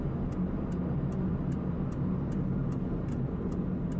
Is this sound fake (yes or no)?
no